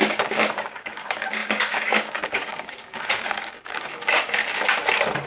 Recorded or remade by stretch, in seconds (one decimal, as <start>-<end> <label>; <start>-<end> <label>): 0.0-4.4 remade; 4.4-5.3 recorded